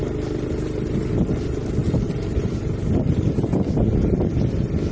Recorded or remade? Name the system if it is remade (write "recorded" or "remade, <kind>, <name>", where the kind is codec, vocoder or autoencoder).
recorded